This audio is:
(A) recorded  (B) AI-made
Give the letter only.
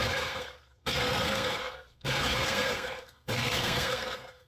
B